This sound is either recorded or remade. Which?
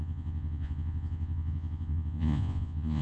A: remade